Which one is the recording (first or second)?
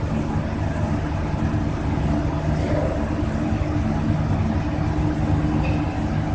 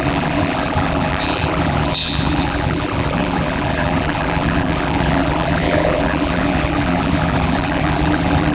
first